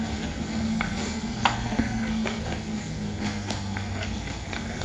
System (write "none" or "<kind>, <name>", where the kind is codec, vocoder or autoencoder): codec, SNAC